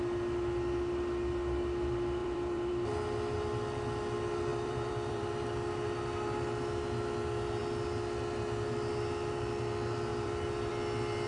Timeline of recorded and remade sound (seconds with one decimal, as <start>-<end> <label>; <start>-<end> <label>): 0.0-2.2 recorded; 2.2-2.7 remade; 2.7-4.5 recorded; 4.5-5.3 remade; 5.3-10.1 recorded; 10.1-10.7 remade; 10.7-11.3 recorded